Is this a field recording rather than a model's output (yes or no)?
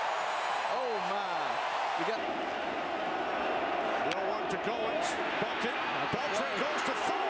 yes